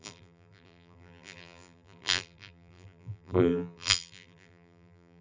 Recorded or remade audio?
remade